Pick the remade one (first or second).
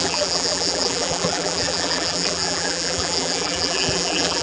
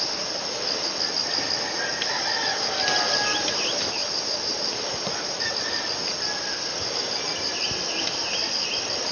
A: first